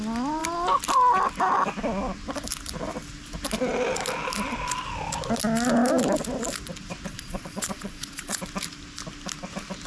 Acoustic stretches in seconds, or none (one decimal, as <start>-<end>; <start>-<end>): 0.0-7.1; 8.4-9.9